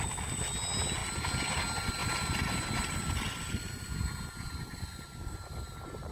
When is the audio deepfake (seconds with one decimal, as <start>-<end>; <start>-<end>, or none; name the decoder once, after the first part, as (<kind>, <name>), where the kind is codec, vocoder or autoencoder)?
2.0-6.1 (vocoder, BigVGAN v2)